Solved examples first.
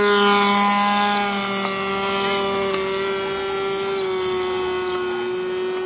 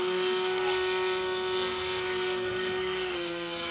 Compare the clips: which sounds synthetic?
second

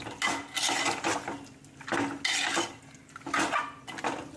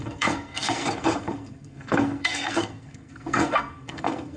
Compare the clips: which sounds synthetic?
second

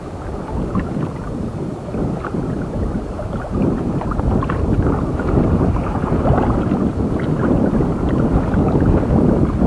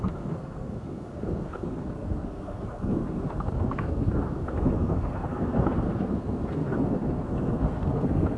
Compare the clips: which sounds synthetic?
second